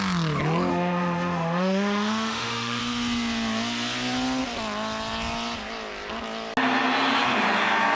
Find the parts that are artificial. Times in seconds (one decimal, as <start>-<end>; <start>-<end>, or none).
0.7-2.8